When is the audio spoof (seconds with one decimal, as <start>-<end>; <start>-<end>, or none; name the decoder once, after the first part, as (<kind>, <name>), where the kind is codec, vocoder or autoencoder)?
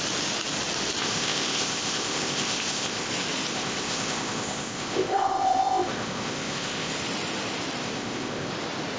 1.0-3.1 (codec, ZipCodec); 3.5-6.9; 7.8-8.5